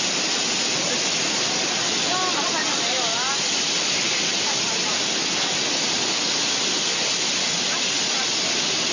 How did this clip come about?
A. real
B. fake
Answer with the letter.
A